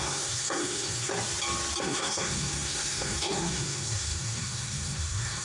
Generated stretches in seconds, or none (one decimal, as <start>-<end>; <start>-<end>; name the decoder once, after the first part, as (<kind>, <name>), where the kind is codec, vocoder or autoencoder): 0.0-1.1 (codec, SNAC); 1.8-5.4